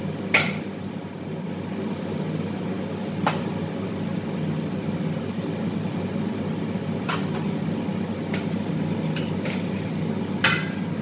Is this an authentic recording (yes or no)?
yes